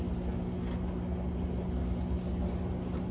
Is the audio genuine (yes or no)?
yes